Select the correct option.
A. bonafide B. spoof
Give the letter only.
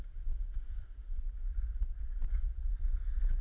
A